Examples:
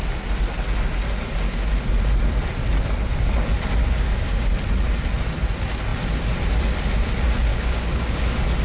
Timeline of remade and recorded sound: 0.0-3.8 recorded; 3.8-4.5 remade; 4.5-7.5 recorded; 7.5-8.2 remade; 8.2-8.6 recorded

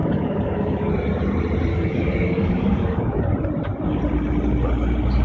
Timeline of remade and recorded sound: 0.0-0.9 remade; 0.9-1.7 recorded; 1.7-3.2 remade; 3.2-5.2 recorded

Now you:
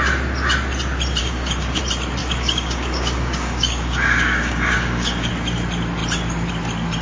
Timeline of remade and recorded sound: 0.0-1.2 recorded; 1.2-1.8 remade; 1.8-2.2 recorded; 2.2-5.3 remade; 5.3-7.0 recorded

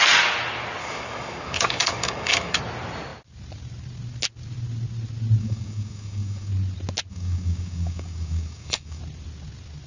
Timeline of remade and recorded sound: 0.0-0.8 recorded; 0.8-2.6 remade; 2.6-5.4 recorded; 5.4-6.5 remade; 6.5-7.1 recorded; 7.1-9.0 remade; 9.0-9.9 recorded

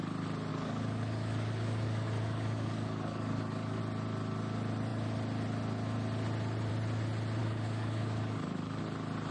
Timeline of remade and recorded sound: 0.0-0.5 recorded; 0.5-3.8 remade; 3.8-7.4 recorded; 7.4-8.8 remade; 8.8-9.3 recorded

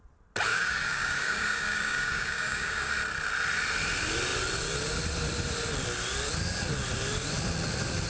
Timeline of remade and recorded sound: 0.0-0.5 recorded; 0.5-2.9 remade; 2.9-8.1 recorded

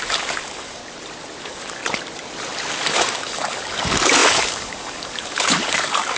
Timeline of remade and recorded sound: 0.0-0.8 remade; 0.8-1.4 recorded; 1.4-1.8 remade; 1.8-2.7 recorded; 2.7-6.2 remade

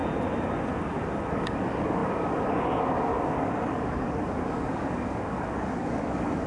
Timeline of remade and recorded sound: 0.0-1.3 recorded; 1.3-6.5 remade